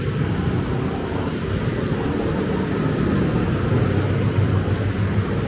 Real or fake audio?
real